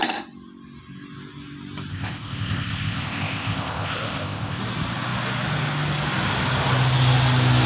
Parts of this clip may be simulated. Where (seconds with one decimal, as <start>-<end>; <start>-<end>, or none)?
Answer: 1.9-4.6